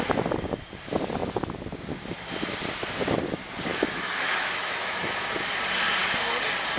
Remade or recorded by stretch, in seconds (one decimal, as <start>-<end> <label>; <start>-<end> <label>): 0.0-3.7 recorded; 3.7-5.5 remade; 5.5-6.8 recorded

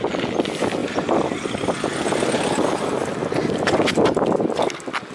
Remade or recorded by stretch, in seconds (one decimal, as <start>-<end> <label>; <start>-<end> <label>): 0.0-5.1 recorded